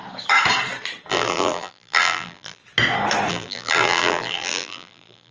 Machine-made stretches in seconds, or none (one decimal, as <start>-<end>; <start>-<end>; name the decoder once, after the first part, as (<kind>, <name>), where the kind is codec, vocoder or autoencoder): 1.1-2.6 (vocoder, BigVGAN v2); 3.3-5.3